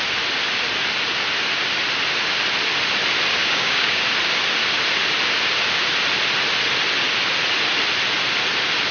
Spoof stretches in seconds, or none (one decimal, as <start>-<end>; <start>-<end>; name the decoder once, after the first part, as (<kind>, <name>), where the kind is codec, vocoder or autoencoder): 3.4-4.0 (codec, DAC)